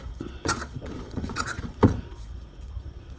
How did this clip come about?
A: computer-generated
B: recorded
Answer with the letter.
A